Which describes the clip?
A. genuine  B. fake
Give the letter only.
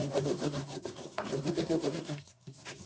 B